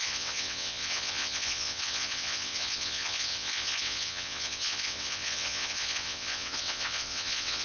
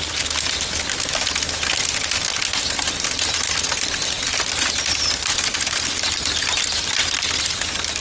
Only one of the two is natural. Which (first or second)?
second